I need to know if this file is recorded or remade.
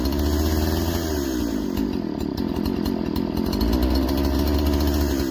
recorded